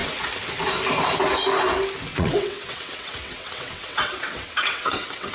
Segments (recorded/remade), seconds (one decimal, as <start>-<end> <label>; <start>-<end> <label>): 0.0-2.1 recorded; 2.1-5.3 remade